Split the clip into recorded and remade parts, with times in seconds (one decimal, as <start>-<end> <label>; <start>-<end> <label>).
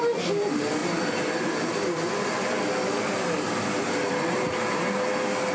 0.0-5.5 recorded